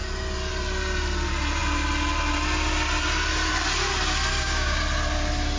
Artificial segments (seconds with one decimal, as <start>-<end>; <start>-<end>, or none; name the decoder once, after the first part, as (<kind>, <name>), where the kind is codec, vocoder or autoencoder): 4.3-4.8 (codec, DAC)